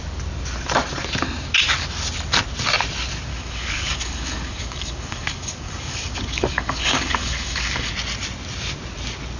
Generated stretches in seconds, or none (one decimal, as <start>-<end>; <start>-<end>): 3.3-7.9